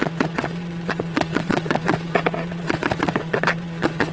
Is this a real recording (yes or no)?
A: no